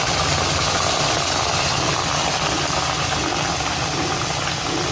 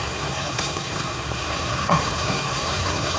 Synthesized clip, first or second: second